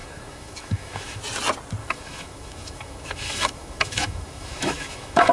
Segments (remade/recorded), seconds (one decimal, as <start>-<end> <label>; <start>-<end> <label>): 0.0-1.2 remade; 1.2-1.8 recorded; 1.8-5.3 remade